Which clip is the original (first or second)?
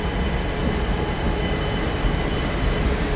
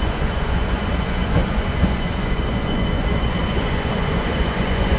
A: first